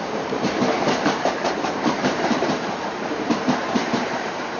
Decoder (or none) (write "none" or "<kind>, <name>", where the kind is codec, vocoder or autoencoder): vocoder, BigVGAN v2